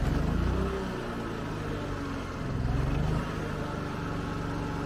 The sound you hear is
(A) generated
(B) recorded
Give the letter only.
B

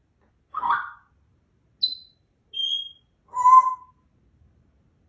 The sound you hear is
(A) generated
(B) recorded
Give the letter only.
B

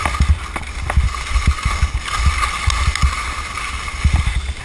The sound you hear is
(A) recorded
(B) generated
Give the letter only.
A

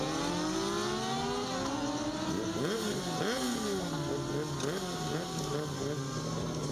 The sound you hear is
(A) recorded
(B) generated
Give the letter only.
A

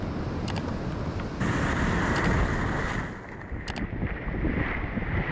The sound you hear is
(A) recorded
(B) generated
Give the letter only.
A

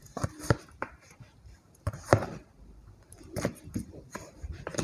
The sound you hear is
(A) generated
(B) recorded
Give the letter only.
A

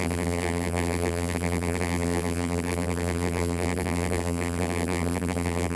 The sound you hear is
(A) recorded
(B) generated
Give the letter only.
B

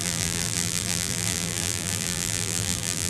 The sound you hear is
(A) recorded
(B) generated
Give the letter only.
B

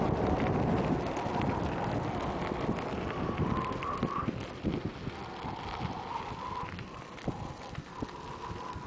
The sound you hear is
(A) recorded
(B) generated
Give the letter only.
A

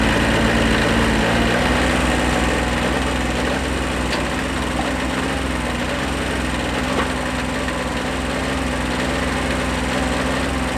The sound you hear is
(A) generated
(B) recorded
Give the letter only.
B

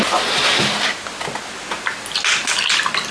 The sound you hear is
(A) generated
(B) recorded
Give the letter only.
B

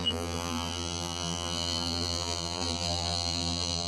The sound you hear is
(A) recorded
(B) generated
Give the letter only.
B